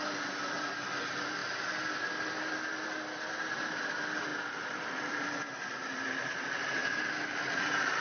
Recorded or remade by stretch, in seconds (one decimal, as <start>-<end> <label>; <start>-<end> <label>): 0.0-8.0 recorded